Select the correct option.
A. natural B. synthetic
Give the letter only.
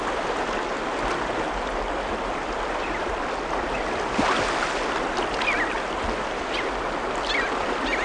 A